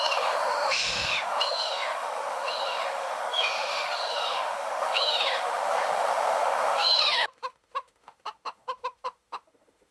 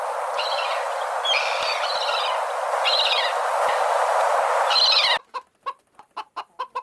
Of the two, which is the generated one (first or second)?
first